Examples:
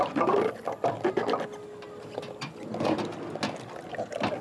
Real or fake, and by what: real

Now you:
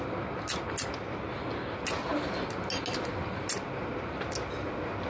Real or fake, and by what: real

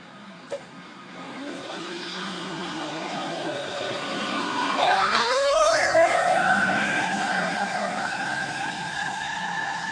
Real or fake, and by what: fake, codec, SNAC